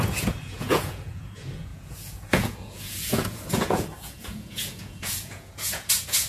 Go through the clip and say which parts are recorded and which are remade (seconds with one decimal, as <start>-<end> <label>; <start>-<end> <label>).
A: 0.0-6.3 remade